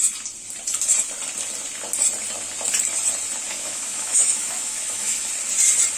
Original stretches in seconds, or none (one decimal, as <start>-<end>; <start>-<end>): 0.0-3.5; 5.3-6.0